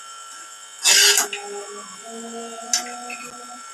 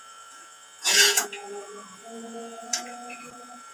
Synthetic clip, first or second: second